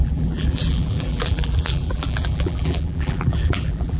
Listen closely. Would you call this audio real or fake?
fake